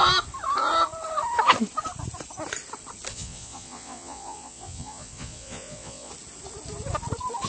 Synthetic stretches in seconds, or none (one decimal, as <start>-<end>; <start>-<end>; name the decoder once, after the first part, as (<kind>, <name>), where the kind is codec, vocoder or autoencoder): 3.1-6.1 (vocoder, Vocos)